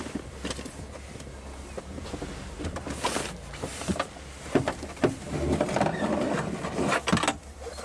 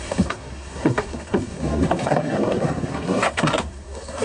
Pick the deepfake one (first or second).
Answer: second